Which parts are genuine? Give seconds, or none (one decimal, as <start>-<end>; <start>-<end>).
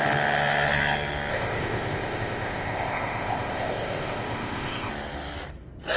0.0-1.3; 4.9-6.0